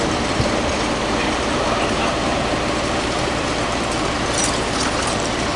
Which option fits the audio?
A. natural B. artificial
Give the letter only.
B